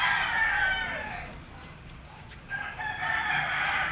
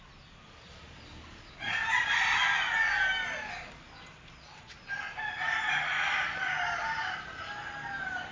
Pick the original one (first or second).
second